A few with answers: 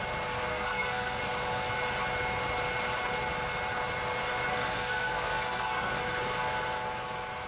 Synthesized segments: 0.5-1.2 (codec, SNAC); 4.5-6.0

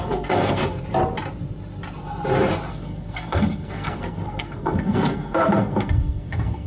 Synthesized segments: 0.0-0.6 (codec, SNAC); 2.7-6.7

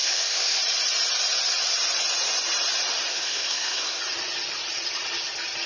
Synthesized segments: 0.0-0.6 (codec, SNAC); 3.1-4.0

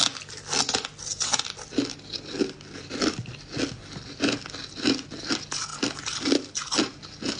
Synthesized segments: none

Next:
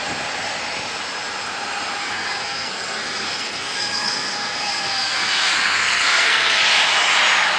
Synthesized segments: 2.0-6.6 (codec, SNAC)